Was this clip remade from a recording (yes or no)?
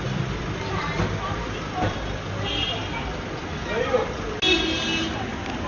no